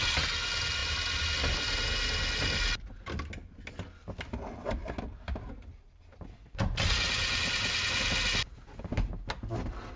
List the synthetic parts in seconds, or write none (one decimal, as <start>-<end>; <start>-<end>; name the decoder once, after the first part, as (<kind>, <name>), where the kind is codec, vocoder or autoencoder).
none